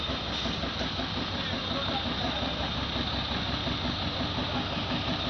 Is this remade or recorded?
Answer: recorded